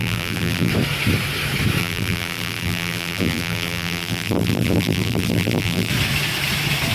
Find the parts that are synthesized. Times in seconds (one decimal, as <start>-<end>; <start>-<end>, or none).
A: 0.0-0.7; 1.8-5.9